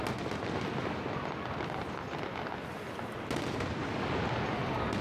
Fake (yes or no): no